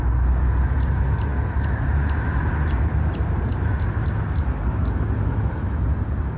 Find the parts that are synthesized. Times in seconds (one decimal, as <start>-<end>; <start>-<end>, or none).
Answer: none